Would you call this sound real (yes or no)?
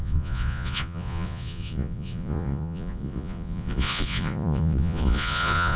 no